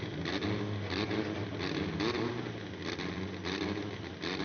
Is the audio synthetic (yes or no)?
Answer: no